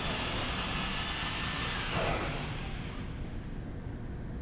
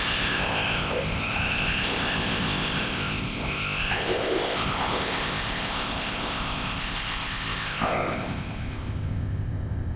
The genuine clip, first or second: first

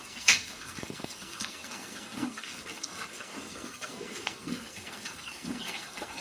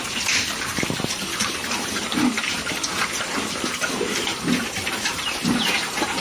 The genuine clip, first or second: second